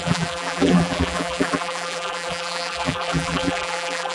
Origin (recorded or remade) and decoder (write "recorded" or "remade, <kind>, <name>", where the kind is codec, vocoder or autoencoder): remade, vocoder, BigVGAN v2